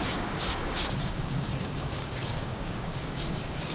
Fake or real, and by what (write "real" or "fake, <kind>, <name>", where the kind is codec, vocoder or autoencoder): fake, codec, DAC